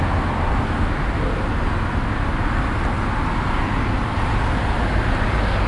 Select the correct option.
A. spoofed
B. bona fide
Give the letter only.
B